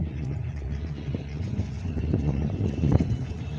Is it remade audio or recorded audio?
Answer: remade